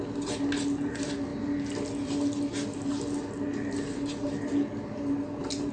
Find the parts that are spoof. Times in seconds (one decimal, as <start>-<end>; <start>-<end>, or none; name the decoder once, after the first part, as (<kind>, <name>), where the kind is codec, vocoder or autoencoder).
none